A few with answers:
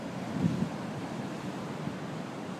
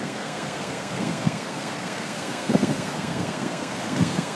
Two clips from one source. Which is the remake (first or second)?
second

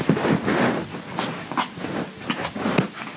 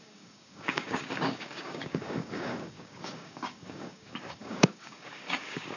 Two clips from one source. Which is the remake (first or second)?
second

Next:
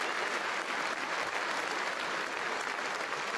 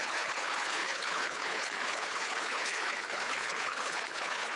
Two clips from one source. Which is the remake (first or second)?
second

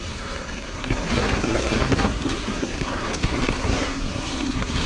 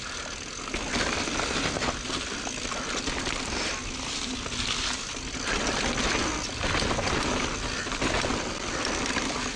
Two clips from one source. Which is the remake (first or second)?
first